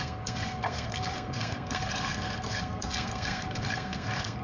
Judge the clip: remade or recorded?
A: remade